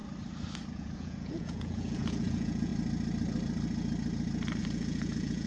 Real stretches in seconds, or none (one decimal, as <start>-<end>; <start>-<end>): 0.0-0.7; 2.7-4.6